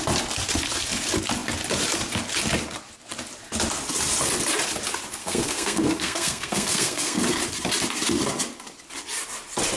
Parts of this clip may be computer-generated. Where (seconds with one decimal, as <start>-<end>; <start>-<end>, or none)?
5.2-7.2